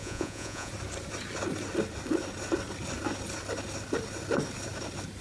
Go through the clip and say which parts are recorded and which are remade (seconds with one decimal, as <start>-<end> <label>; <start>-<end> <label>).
0.0-0.7 remade; 0.7-5.2 recorded

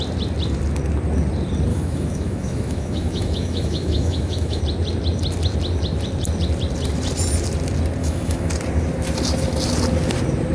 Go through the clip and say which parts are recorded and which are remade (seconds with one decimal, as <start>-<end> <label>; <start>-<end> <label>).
0.0-1.7 recorded; 1.7-4.6 remade; 4.6-8.0 recorded; 8.0-8.5 remade; 8.5-10.5 recorded